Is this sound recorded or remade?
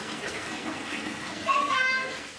remade